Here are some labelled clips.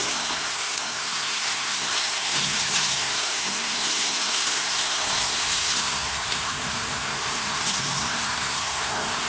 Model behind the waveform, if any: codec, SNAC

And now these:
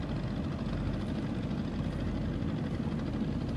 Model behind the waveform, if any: none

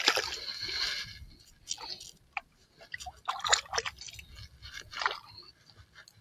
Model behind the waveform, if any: none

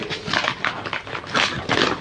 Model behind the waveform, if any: none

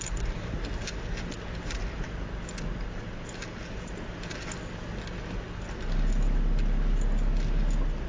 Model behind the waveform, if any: none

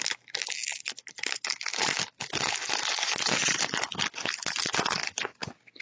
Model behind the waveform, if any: none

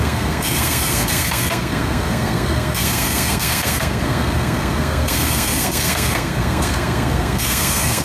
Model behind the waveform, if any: codec, SNAC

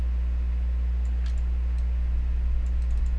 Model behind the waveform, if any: none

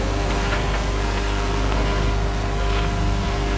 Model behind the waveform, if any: codec, SNAC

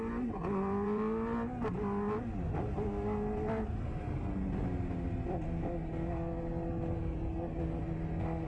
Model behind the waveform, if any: none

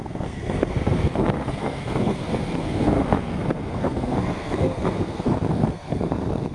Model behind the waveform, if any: codec, SNAC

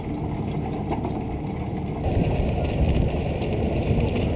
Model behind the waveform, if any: none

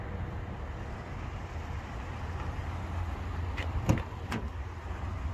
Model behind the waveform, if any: none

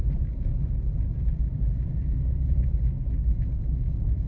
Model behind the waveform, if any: none